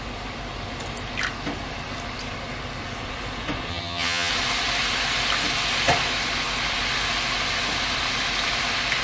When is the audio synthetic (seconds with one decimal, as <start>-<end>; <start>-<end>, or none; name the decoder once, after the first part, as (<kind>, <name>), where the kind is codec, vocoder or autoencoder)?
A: 3.7-4.3 (vocoder, HiFi-GAN)